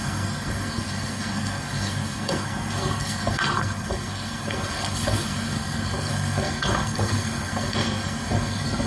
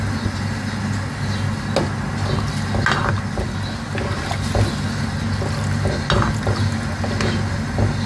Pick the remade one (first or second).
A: first